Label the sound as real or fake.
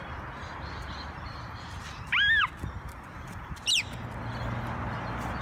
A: real